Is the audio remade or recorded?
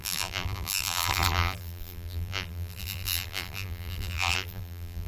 remade